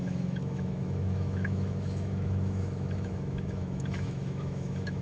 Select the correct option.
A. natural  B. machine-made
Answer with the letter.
B